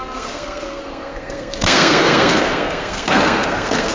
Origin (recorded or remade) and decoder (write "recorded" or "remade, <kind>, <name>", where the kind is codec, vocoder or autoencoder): remade, codec, SNAC